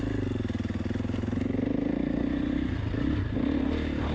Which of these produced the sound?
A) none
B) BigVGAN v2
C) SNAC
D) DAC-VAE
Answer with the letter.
A